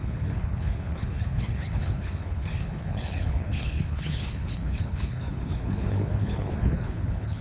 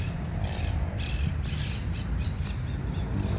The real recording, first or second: second